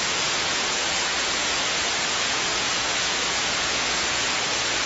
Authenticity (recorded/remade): remade